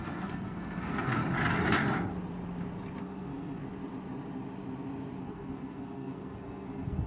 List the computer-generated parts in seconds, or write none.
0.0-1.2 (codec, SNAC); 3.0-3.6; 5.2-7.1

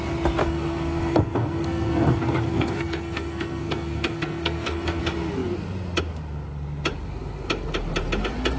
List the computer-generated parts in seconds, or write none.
0.4-5.0 (codec, SNAC)